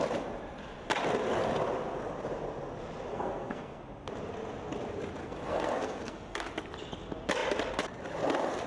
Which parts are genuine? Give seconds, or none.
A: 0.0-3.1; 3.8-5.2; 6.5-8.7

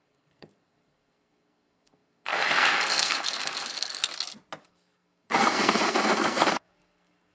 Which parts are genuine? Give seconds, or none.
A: 4.1-4.6

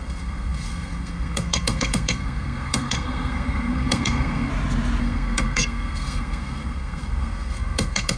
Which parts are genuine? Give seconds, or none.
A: 4.5-5.0

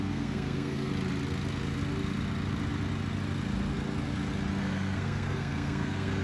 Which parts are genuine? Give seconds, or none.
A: 0.9-4.6

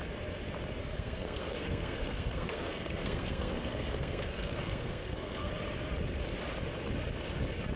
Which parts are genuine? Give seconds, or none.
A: 0.0-0.8; 5.5-7.8

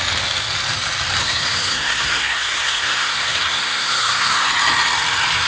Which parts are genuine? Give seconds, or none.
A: 0.0-1.2; 4.5-5.5

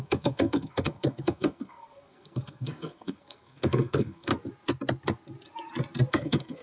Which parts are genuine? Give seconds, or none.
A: 4.3-6.1